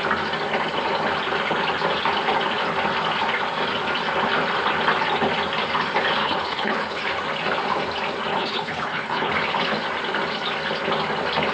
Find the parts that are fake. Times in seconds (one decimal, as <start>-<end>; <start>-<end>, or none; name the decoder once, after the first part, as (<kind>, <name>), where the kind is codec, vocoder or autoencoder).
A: 6.2-7.0 (codec, HILCodec); 8.3-9.3